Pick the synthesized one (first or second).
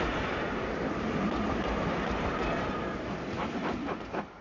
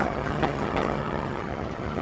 second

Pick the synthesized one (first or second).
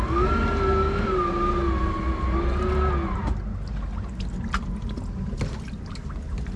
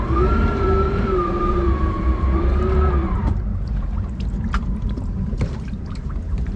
second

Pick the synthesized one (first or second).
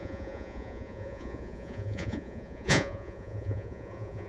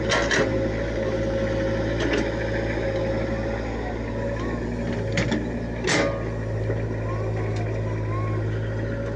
first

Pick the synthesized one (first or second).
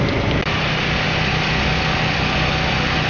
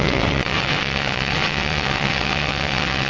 second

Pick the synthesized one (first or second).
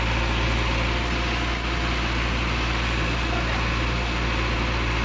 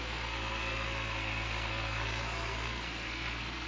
second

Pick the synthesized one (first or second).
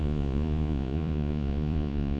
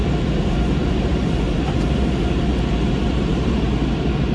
first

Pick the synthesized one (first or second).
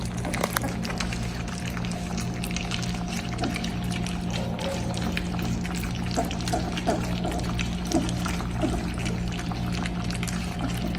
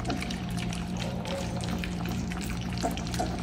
second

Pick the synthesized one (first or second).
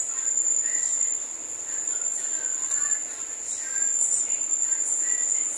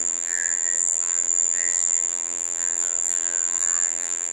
second